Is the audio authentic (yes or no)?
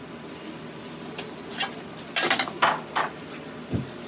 yes